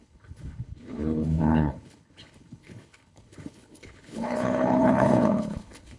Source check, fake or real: fake